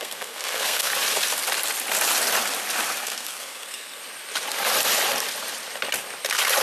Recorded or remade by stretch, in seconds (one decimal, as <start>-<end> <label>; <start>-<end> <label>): 0.0-0.9 remade; 0.9-3.0 recorded; 3.0-4.0 remade; 4.0-6.6 recorded